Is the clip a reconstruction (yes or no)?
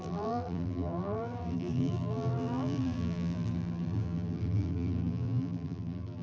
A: yes